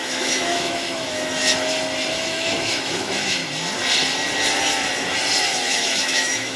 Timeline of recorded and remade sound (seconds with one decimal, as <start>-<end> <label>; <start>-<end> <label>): 0.0-1.4 remade; 1.4-2.1 recorded; 2.1-3.4 remade; 3.4-5.4 recorded; 5.4-6.6 remade